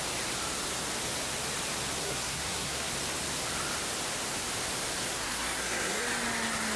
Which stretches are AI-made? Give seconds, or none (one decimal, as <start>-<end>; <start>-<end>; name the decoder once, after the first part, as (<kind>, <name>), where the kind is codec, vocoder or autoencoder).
2.0-2.9 (codec, SNAC); 5.1-6.0